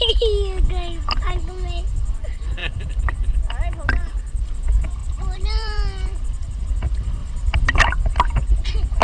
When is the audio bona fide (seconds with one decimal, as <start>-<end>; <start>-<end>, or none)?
0.0-5.0; 6.6-7.2; 7.8-9.0